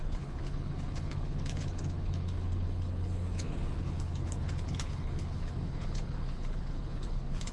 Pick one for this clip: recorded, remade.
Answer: remade